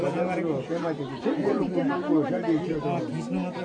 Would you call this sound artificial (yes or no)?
no